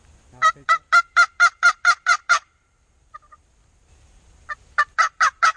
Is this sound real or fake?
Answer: fake